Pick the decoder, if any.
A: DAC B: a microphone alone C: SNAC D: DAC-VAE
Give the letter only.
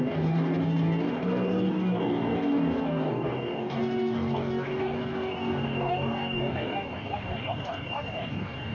A